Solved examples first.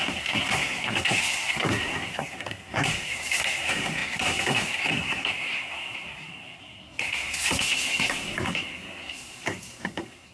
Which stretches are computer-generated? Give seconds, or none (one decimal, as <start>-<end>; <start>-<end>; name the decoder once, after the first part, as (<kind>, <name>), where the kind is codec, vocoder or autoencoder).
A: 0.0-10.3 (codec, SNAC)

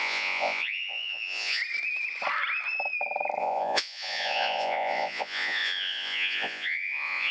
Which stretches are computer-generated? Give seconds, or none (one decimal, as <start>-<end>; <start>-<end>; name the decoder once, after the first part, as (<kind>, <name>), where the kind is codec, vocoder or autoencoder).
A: 0.0-1.6 (vocoder, Vocos); 3.4-7.3

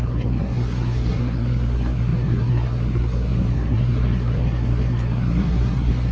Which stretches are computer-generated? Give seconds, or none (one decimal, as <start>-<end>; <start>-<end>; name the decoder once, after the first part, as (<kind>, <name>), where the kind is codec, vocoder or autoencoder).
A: 0.0-6.1 (codec, SNAC)